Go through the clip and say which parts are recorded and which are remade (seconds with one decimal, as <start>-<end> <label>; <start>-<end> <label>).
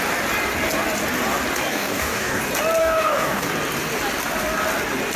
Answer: 0.0-1.7 recorded; 1.7-2.4 remade; 2.4-2.8 recorded; 2.8-3.5 remade; 3.5-5.2 recorded